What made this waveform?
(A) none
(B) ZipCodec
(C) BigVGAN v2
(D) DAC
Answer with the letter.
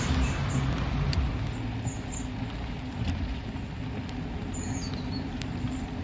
A